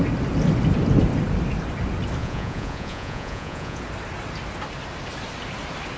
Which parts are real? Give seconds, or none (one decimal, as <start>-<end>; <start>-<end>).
0.0-2.2; 3.8-6.0